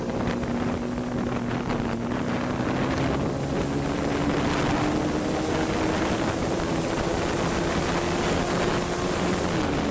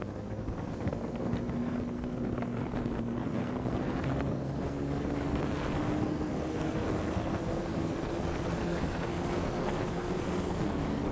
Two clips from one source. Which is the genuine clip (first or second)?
first